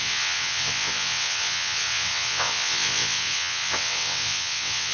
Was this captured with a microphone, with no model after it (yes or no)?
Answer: no